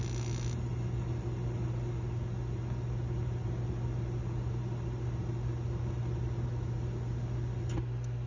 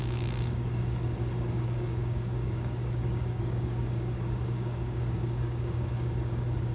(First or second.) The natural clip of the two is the first